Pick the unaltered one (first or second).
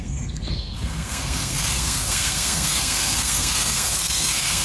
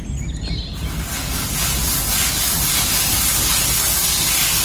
second